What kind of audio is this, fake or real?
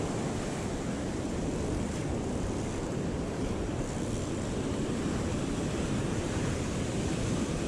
real